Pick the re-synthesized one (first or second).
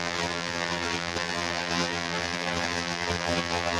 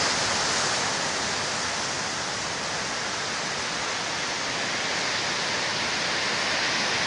first